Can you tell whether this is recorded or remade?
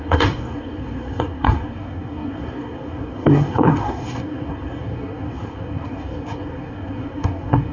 remade